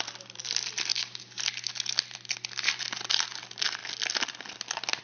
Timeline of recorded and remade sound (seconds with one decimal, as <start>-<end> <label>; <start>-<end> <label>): 0.0-5.0 recorded